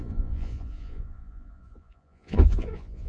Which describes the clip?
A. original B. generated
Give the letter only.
B